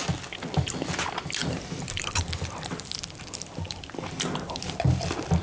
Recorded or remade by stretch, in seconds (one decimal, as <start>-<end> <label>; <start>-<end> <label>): 0.0-5.4 recorded